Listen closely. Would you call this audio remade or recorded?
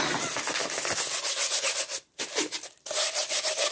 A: recorded